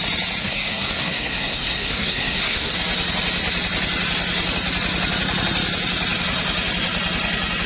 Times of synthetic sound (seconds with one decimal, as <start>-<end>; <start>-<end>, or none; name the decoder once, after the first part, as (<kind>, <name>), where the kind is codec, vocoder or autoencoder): 0.4-2.7 (codec, SNAC)

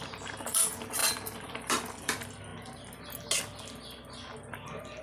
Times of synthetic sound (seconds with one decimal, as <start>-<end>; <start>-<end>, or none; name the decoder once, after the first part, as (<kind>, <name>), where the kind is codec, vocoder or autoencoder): 0.0-2.5 (vocoder, BigVGAN v2)

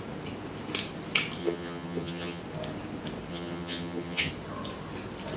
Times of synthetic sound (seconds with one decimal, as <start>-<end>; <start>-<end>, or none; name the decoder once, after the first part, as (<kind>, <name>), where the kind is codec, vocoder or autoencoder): 1.4-2.4 (vocoder, HiFi-GAN); 3.3-4.3

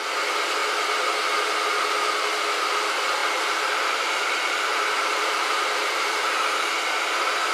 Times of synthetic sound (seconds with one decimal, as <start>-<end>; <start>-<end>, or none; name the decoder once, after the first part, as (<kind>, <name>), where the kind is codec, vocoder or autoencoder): 3.2-6.8 (vocoder, BigVGAN v2)

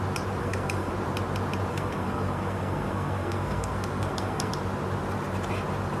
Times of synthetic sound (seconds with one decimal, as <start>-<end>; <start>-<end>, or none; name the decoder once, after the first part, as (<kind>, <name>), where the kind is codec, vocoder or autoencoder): 0.4-0.9 (codec, SNAC); 1.7-4.5

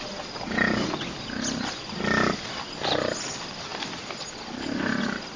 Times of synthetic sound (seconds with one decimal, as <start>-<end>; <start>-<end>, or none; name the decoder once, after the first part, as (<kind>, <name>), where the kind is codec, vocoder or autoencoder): none

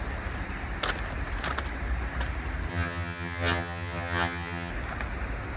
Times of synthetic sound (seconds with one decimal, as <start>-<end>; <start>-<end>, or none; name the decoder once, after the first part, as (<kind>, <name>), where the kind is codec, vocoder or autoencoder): 2.7-4.7 (vocoder, HiFi-GAN)

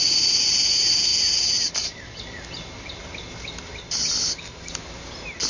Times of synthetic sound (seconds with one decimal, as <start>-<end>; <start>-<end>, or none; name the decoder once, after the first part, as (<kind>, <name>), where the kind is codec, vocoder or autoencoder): none